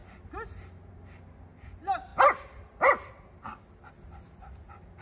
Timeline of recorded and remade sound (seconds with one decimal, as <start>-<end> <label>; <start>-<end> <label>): 0.0-5.0 recorded